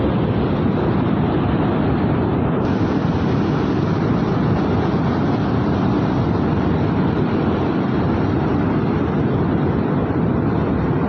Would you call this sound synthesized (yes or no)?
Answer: no